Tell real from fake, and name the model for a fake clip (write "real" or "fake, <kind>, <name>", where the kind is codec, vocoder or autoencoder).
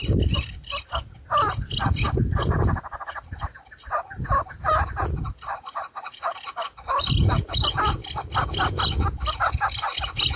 fake, vocoder, BigVGAN v2